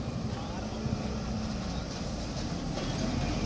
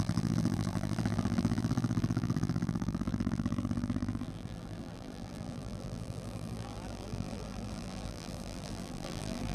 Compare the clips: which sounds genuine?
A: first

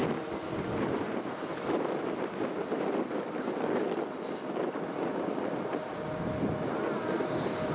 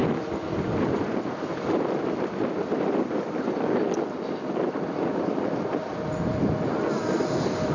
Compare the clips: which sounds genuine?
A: first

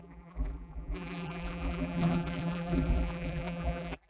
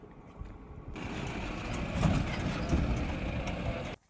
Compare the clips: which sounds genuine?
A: second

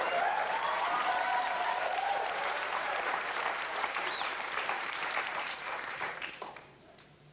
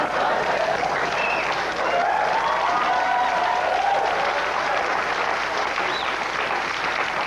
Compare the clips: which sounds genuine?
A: second